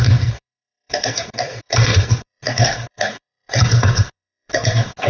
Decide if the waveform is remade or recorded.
remade